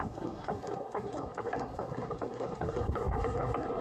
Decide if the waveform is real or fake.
fake